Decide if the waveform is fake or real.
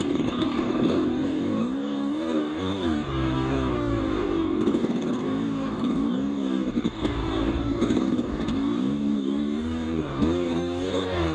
fake